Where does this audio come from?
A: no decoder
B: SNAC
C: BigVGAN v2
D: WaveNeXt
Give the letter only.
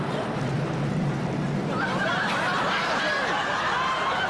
A